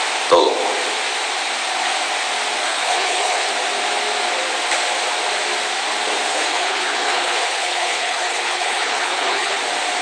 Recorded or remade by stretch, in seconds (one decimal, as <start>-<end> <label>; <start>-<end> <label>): 0.0-2.7 recorded; 2.7-3.5 remade; 3.5-6.3 recorded; 6.3-9.6 remade; 9.6-10.0 recorded